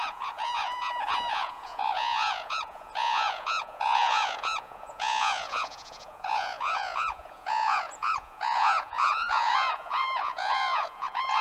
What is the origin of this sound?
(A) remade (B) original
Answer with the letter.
A